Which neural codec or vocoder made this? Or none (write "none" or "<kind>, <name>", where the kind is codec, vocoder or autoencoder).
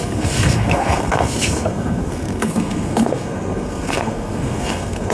codec, SNAC